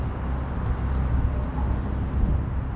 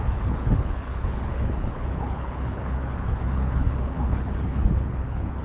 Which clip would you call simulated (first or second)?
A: second